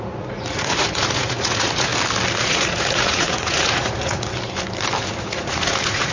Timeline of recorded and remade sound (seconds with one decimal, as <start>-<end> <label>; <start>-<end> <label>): 0.0-1.9 remade; 1.9-2.4 recorded; 2.4-4.3 remade; 4.3-5.2 recorded; 5.2-6.1 remade